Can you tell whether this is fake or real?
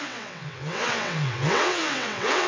fake